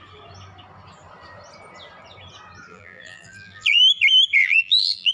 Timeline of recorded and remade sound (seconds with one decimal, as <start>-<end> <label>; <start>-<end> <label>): 0.0-2.7 recorded; 2.7-3.8 remade; 3.8-4.4 recorded; 4.4-5.1 remade